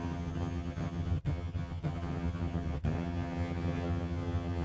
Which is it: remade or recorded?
remade